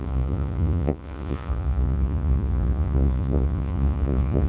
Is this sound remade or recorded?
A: remade